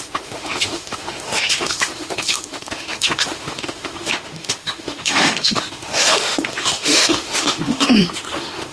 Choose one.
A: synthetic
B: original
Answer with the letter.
A